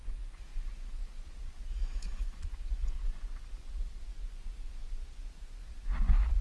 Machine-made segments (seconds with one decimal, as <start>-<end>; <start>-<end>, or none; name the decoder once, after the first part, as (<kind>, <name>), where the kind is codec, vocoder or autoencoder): 0.0-6.4 (vocoder, Vocos)